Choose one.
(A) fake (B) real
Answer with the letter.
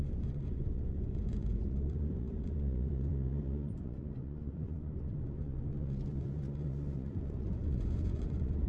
A